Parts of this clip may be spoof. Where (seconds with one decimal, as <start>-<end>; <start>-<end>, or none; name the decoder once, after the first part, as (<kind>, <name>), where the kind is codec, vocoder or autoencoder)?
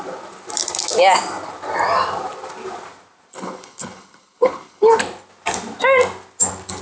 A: 3.3-5.0 (codec, HILCodec)